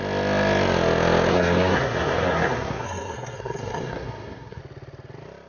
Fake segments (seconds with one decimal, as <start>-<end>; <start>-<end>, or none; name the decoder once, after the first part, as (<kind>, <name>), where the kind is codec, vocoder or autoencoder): 1.3-4.6 (codec, SNAC)